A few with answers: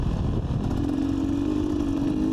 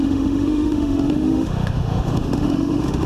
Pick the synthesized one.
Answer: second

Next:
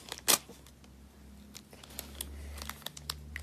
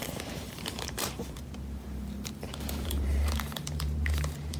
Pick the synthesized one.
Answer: second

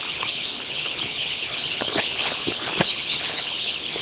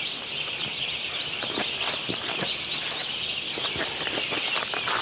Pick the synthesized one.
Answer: first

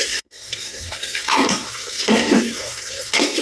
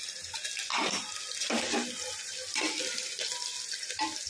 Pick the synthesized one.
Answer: first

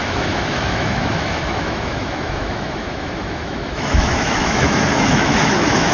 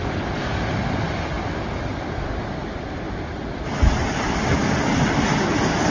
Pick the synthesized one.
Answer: first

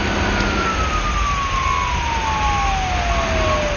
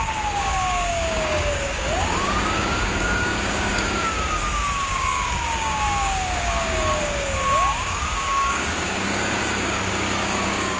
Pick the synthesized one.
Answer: second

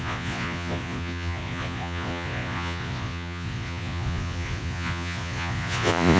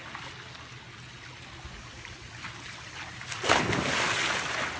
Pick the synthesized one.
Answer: first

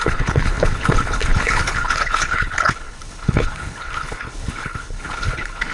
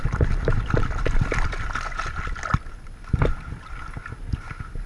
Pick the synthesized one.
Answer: first